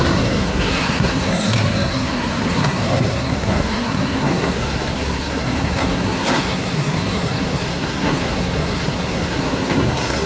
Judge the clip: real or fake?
fake